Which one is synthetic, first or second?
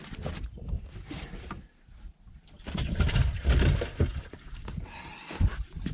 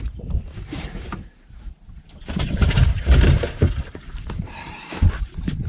second